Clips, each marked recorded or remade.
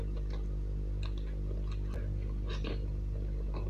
recorded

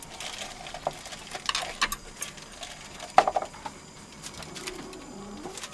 recorded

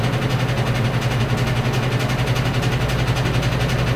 recorded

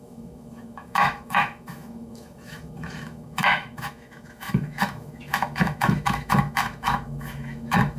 remade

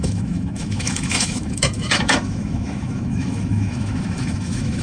remade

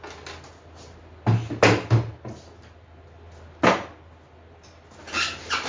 recorded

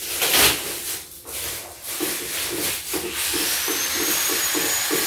recorded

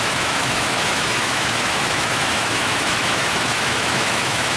remade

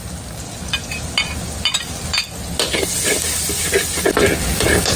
recorded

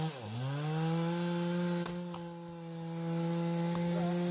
recorded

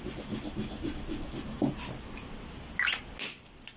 recorded